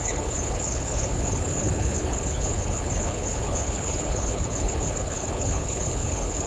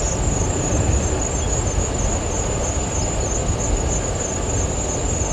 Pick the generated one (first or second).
first